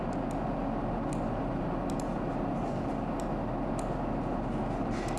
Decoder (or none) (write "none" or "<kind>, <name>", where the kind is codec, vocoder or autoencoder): none